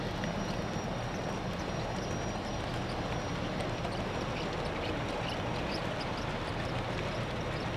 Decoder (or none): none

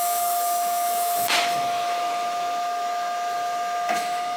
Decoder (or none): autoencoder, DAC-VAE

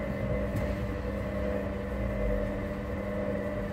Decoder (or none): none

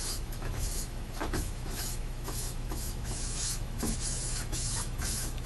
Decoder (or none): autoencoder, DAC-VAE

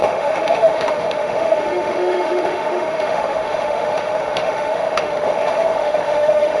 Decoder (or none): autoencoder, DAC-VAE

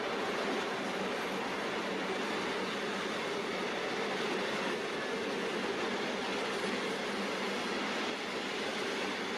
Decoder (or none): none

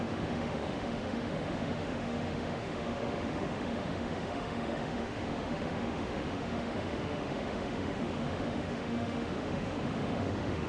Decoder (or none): autoencoder, DAC-VAE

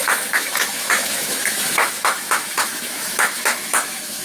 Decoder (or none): autoencoder, DAC-VAE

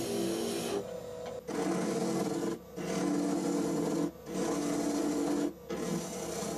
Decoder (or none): none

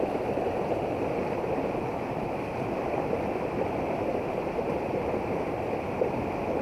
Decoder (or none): none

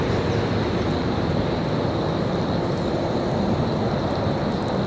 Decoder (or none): none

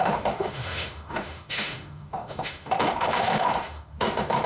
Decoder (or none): autoencoder, DAC-VAE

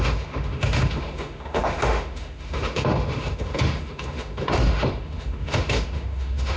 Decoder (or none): autoencoder, DAC-VAE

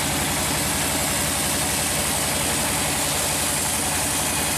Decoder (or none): none